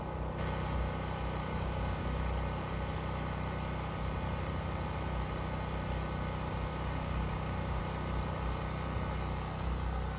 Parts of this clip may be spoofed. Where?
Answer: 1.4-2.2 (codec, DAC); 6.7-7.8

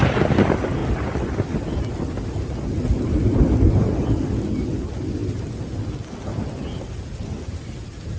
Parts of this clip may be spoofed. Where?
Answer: none

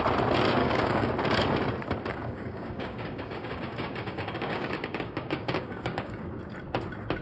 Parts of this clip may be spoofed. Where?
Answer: 0.6-1.1 (codec, DAC); 2.1-6.4

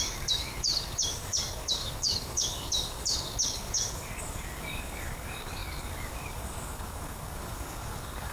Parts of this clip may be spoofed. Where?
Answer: 0.0-8.3 (codec, DAC)

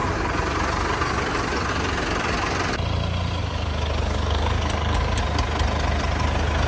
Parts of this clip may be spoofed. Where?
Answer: 3.4-5.2 (codec, DAC)

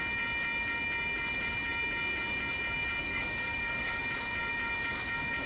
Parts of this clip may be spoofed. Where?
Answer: 3.0-4.0 (codec, DAC)

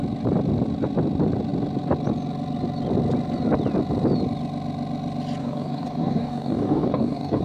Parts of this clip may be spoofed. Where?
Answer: 5.4-7.4 (codec, DAC)